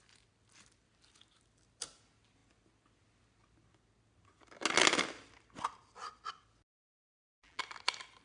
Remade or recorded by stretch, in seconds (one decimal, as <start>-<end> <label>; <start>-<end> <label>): 0.0-7.0 recorded; 7.0-7.6 remade; 7.6-8.2 recorded